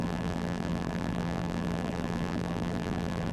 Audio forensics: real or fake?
fake